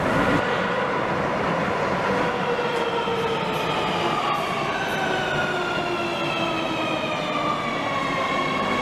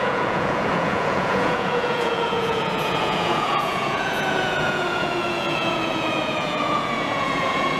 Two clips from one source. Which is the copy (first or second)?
second